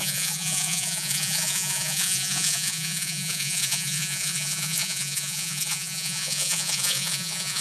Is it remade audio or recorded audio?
remade